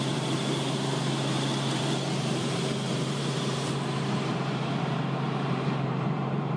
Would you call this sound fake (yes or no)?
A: yes